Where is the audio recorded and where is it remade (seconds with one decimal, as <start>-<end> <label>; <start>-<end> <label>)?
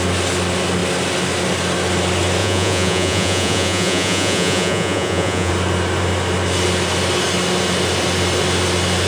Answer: 0.0-2.4 recorded; 2.4-5.5 remade; 5.5-9.1 recorded